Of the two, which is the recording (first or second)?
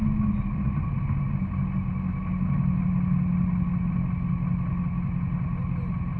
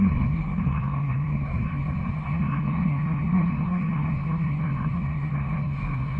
first